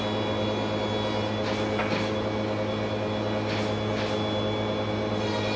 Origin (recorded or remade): recorded